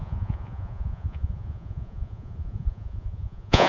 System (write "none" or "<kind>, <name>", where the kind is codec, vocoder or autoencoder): vocoder, Vocos